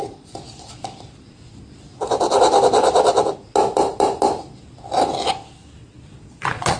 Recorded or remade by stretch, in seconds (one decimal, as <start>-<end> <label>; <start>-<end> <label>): 0.0-5.8 recorded; 5.8-6.8 remade